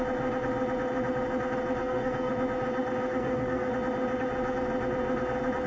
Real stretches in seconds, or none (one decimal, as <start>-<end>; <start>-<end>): 0.0-1.8; 2.3-3.1; 3.7-5.7

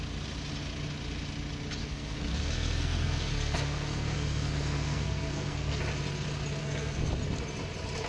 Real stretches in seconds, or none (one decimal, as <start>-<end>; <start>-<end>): 0.0-1.8; 5.8-6.6; 7.1-8.1